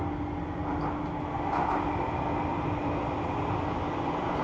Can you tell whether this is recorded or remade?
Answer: recorded